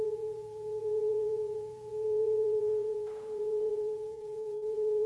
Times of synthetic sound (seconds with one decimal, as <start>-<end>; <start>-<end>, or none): 0.0-5.1